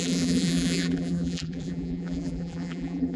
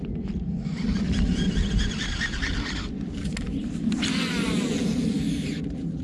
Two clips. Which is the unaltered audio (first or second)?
second